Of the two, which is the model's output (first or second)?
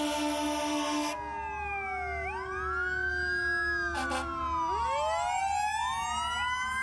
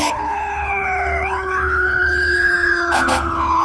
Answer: second